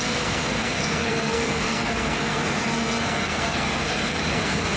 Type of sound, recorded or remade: remade